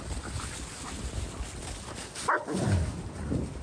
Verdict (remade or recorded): recorded